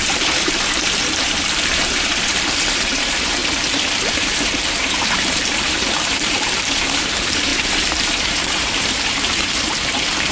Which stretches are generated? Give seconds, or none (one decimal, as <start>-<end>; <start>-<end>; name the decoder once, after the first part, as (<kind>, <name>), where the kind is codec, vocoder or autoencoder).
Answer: 0.0-3.4 (vocoder, BigVGAN v2); 4.1-10.3